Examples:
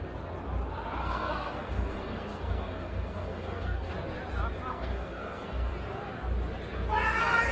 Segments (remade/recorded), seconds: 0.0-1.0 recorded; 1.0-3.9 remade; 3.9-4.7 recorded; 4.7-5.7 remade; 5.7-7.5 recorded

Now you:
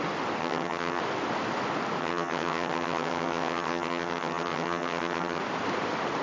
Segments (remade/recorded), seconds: 0.0-0.4 recorded; 0.4-1.0 remade; 1.0-2.0 recorded; 2.0-5.4 remade; 5.4-6.2 recorded

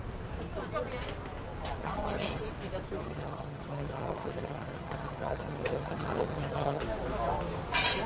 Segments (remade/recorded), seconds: 0.0-1.8 recorded; 1.8-2.4 remade; 2.4-3.0 recorded; 3.0-6.8 remade; 6.8-8.1 recorded

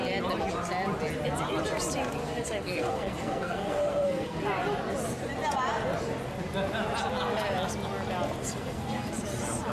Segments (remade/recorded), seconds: 0.0-2.2 recorded; 2.2-4.4 remade; 4.4-8.4 recorded; 8.4-9.1 remade; 9.1-9.7 recorded

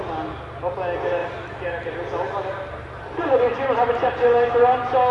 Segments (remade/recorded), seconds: 0.0-1.2 recorded; 1.2-3.4 remade; 3.4-5.1 recorded

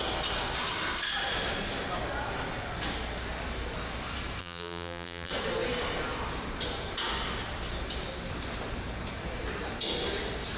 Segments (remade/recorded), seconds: 0.0-4.4 recorded; 4.4-5.3 remade; 5.3-10.6 recorded

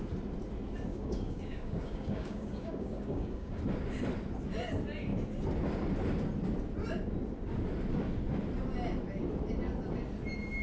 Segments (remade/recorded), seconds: 0.0-0.9 recorded; 0.9-3.6 remade; 3.6-10.6 recorded

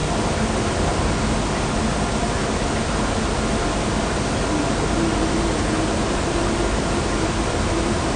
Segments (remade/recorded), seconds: 0.0-8.2 recorded